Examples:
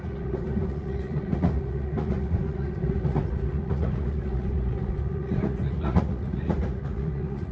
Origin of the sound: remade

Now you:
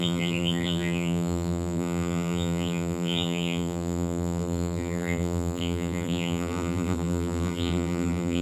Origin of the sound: remade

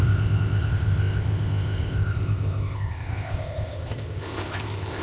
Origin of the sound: remade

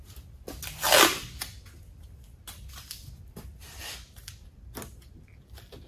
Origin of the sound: recorded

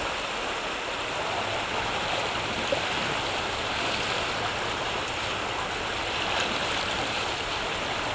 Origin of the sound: remade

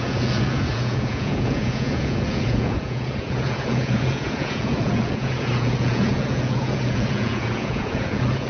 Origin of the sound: remade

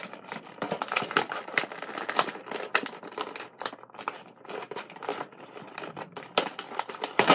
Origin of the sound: remade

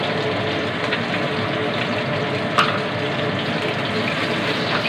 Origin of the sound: recorded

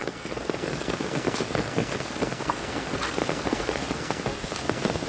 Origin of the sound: remade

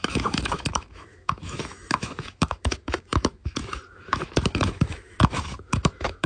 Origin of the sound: remade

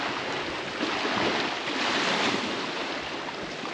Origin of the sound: recorded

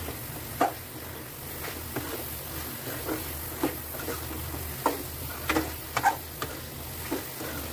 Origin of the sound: recorded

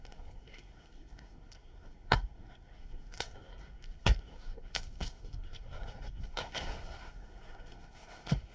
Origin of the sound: remade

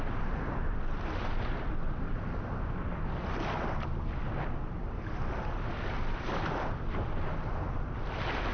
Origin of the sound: recorded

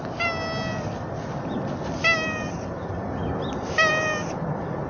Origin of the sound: recorded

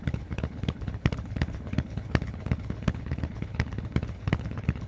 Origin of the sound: remade